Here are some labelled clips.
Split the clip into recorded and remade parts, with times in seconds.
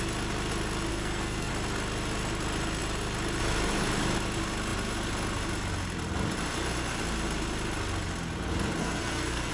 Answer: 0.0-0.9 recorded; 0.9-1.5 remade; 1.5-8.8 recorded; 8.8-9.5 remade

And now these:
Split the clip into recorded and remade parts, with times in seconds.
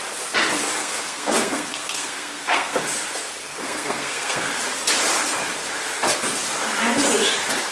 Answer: 0.0-0.8 recorded; 0.8-2.8 remade; 2.8-3.4 recorded; 3.4-4.5 remade; 4.5-7.7 recorded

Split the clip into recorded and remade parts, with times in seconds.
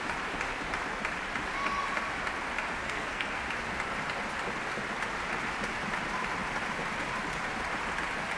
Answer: 0.0-2.8 recorded; 2.8-3.4 remade; 3.4-8.4 recorded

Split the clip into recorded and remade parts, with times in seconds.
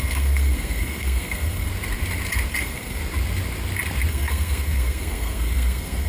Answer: 0.0-1.7 remade; 1.7-2.5 recorded; 2.5-3.0 remade; 3.0-4.1 recorded; 4.1-6.1 remade